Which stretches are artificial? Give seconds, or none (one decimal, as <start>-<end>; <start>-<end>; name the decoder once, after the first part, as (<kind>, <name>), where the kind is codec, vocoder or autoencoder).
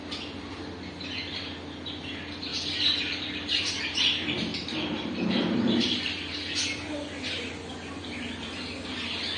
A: 2.5-3.8 (vocoder, BigVGAN v2); 4.5-6.3